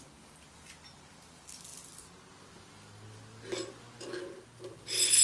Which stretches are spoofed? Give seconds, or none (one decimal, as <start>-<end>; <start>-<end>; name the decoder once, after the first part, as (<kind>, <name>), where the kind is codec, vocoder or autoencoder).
none